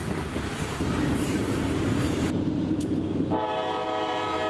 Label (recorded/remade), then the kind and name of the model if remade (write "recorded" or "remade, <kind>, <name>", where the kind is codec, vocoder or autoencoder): remade, vocoder, BigVGAN v2